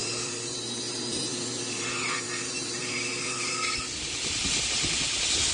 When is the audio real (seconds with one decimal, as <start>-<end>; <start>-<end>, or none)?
0.6-1.3; 4.5-5.5